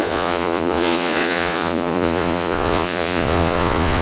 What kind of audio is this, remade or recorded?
remade